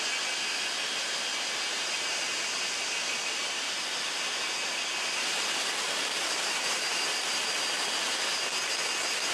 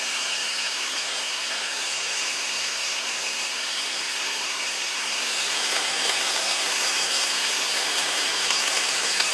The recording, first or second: first